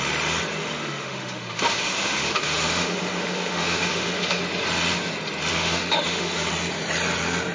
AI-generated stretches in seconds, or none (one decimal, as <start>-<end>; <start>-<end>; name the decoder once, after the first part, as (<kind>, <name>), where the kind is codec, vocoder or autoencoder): 0.6-4.4 (autoencoder, DAC-VAE); 5.5-6.5